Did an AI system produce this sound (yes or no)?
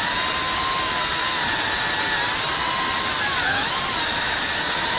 no